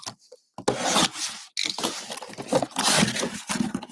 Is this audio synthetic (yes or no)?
no